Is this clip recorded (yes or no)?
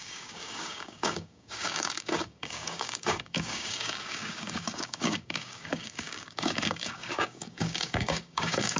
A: no